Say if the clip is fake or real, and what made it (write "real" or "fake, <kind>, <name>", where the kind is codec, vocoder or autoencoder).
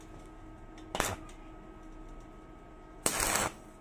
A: real